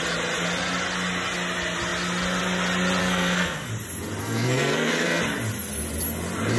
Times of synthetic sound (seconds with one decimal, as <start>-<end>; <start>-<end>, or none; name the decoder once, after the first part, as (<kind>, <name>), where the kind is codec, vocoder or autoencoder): 3.0-3.7 (codec, SNAC); 4.2-5.2